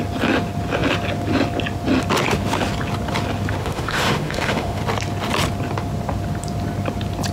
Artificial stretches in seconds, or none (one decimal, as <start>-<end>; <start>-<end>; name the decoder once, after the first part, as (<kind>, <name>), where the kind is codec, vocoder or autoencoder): 3.6-4.8 (autoencoder, DAC-VAE)